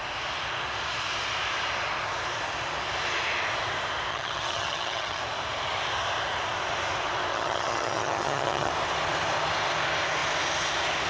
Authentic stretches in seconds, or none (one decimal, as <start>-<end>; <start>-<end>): 0.0-4.1; 5.2-7.3; 8.7-11.1